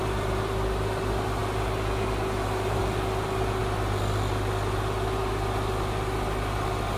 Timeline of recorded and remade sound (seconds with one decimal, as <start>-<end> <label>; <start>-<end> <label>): 0.0-7.0 recorded